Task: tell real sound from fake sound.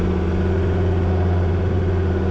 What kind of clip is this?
real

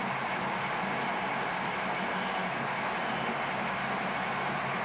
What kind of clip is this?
real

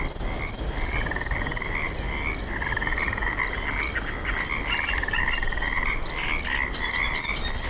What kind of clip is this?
real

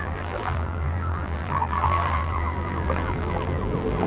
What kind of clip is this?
fake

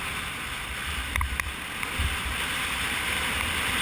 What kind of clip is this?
real